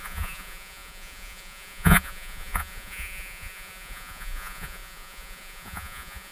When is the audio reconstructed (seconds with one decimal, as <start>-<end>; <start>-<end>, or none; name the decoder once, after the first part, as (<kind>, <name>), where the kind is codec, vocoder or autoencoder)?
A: 0.0-6.3 (vocoder, Vocos)